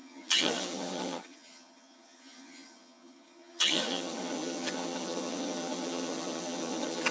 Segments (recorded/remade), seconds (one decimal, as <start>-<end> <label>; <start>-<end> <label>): 0.0-7.1 remade